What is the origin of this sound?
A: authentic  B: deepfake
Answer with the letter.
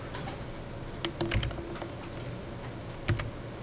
A